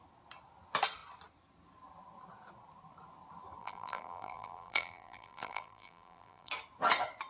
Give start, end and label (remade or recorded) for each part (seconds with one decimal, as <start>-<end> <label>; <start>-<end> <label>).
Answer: 0.0-3.6 recorded; 3.6-6.5 remade; 6.5-7.3 recorded